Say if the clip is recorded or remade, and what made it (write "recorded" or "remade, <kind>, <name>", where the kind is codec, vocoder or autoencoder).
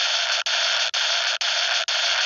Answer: recorded